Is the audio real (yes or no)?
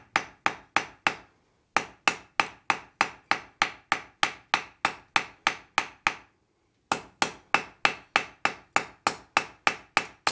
yes